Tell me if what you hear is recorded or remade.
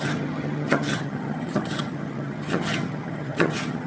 remade